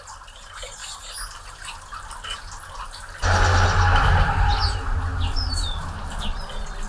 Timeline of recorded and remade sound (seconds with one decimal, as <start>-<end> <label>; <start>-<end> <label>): 0.0-6.9 recorded